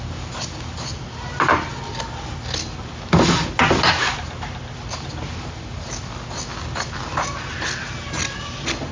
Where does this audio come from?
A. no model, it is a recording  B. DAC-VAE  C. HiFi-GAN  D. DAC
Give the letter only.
A